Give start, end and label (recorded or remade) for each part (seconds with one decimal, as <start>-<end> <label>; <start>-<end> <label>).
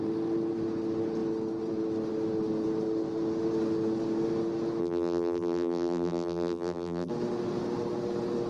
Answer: 0.0-4.8 recorded; 4.8-7.1 remade; 7.1-8.5 recorded